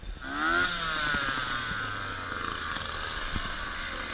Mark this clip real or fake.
real